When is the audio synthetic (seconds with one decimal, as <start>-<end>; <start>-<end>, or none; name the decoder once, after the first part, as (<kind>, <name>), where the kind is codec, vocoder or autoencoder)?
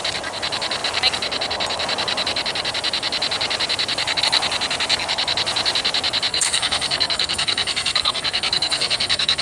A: 6.3-9.4 (codec, SNAC)